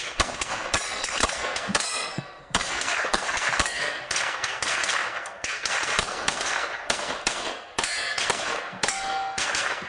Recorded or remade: remade